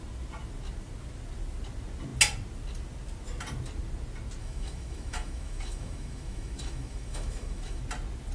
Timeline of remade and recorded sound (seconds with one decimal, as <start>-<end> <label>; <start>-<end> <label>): 0.0-4.4 recorded; 4.4-7.8 remade; 7.8-8.3 recorded